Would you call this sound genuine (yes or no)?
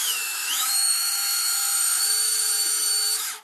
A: no